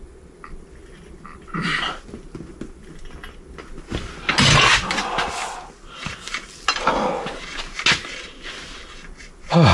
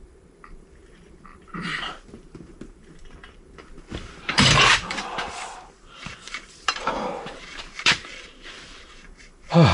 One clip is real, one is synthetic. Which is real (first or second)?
first